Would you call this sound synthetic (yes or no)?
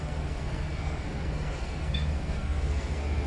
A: yes